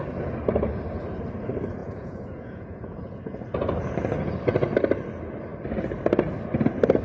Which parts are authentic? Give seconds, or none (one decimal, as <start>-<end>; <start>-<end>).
0.0-1.8; 3.2-7.0